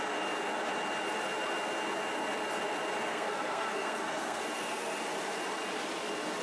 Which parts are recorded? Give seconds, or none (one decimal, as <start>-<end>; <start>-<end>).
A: 0.0-3.1; 4.4-6.4